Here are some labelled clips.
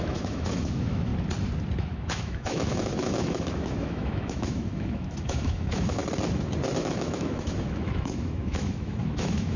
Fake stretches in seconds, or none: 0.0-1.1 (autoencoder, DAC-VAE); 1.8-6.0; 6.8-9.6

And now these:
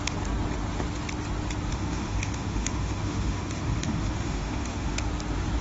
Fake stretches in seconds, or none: 1.7-5.1 (autoencoder, DAC-VAE)

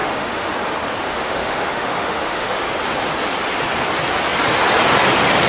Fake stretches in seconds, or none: 0.0-0.5 (autoencoder, DAC-VAE); 1.1-2.6